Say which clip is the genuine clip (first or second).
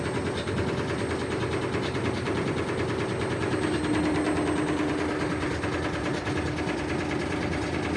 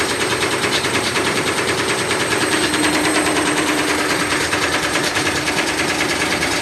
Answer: first